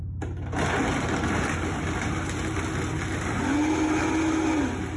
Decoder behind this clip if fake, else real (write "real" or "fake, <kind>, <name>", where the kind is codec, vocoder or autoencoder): real